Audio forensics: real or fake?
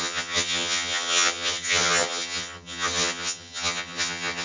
fake